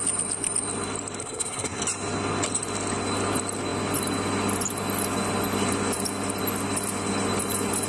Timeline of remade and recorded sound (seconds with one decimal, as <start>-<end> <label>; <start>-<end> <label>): 0.0-1.2 recorded; 1.2-1.8 remade; 1.8-7.9 recorded